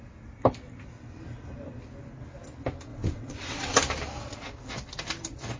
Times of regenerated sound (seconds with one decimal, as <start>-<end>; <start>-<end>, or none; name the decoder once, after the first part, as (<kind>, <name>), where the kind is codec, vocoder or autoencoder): 2.9-3.8 (vocoder, WaveNeXt)